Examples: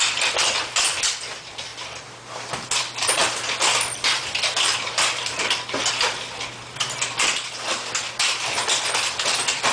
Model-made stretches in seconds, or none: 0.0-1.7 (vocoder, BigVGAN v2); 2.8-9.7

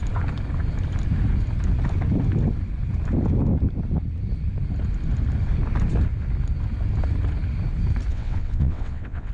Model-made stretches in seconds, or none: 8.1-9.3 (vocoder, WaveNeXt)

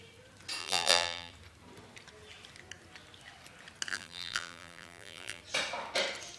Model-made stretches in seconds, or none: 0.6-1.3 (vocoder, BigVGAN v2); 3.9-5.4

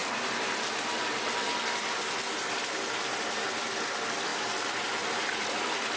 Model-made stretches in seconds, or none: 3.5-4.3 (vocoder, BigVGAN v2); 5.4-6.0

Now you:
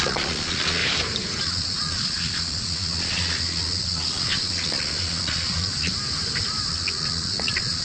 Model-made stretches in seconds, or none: 0.0-0.8 (vocoder, Vocos); 1.4-5.9; 6.7-7.8

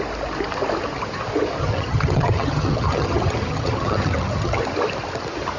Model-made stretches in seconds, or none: 1.6-4.6 (vocoder, HiFi-GAN)

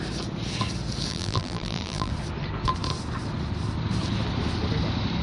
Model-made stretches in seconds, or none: 1.1-2.1 (vocoder, BigVGAN v2)

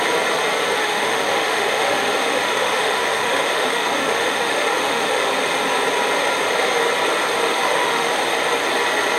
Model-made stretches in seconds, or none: 0.8-5.3 (autoencoder, DAC-VAE); 7.4-8.1